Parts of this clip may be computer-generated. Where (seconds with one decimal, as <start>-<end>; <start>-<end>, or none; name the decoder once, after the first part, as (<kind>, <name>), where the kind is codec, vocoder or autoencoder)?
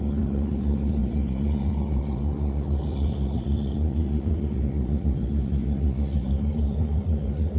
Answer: 0.0-7.6 (vocoder, Vocos)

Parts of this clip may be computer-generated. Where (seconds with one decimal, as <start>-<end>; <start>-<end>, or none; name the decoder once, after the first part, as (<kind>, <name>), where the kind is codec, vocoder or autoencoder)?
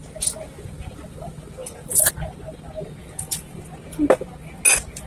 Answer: 1.6-2.1 (vocoder, Vocos); 3.0-3.6